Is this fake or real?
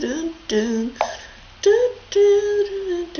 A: real